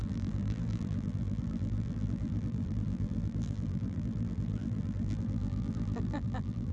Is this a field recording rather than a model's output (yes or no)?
no